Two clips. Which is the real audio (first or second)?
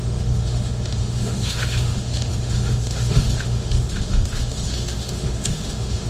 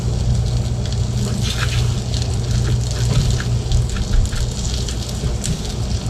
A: second